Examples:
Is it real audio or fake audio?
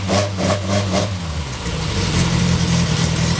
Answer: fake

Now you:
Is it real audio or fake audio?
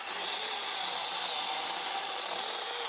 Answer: real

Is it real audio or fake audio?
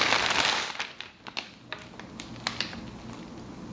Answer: real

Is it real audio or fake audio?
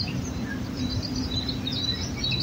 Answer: real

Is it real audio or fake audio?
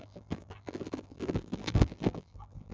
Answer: fake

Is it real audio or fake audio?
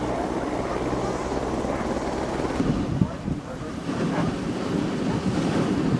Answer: real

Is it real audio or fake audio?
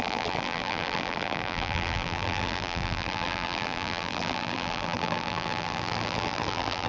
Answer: fake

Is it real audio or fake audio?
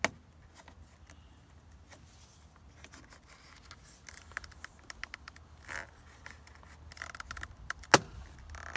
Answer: real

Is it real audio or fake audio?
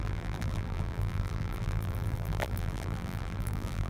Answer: fake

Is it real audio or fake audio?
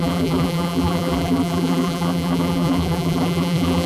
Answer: fake